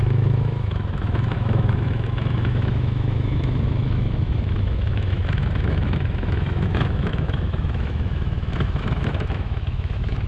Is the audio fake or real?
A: fake